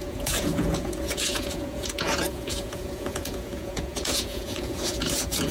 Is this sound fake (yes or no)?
yes